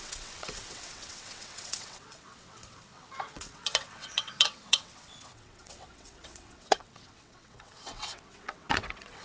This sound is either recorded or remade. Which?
remade